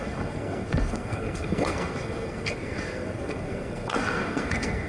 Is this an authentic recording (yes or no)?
no